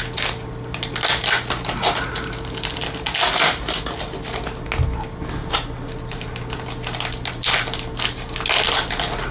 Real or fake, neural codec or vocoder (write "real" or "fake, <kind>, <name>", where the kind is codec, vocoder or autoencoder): real